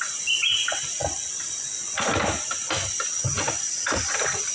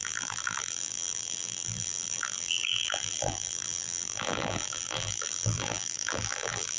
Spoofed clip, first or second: second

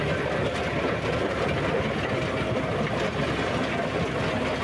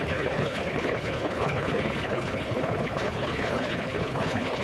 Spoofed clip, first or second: second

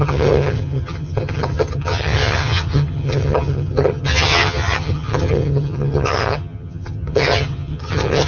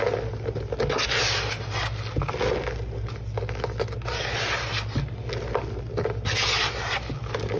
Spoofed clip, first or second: first